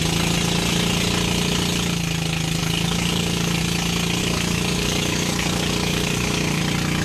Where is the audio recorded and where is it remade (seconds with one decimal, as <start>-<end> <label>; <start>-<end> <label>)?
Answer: 0.0-2.6 recorded; 2.6-3.6 remade; 3.6-4.2 recorded; 4.2-6.6 remade; 6.6-7.0 recorded